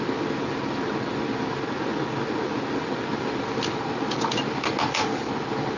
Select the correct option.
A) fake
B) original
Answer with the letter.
B